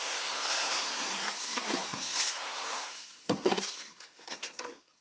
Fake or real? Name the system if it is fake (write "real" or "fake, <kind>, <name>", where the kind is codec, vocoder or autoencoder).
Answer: fake, codec, SNAC